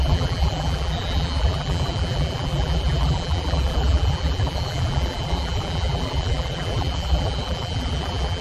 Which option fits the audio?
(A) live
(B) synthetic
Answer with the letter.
B